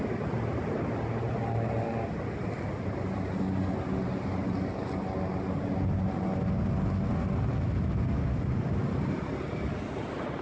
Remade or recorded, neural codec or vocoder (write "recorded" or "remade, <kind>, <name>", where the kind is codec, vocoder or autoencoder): recorded